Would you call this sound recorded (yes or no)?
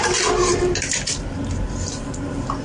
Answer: yes